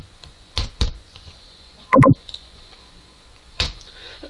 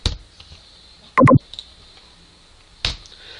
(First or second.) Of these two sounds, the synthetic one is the first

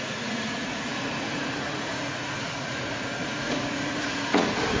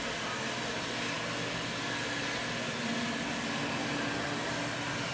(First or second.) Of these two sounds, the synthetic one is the first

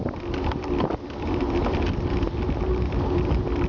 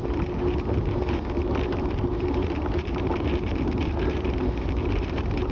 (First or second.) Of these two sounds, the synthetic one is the second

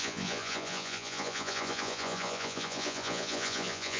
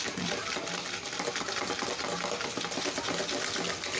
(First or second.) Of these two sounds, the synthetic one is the first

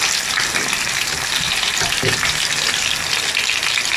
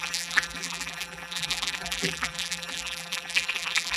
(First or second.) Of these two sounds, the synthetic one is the second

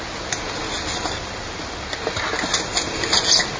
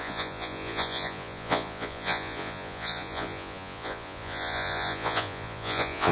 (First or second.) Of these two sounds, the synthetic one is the second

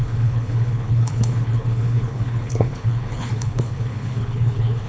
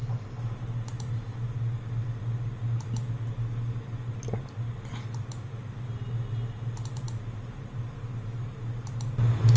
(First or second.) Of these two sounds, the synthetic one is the first